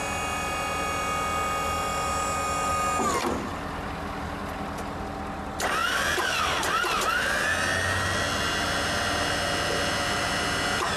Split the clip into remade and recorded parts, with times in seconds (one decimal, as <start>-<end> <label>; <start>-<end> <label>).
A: 0.0-5.8 recorded; 5.8-6.6 remade; 6.6-11.0 recorded